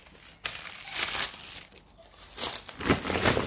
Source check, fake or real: real